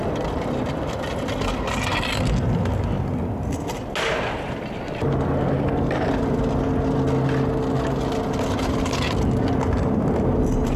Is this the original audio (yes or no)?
yes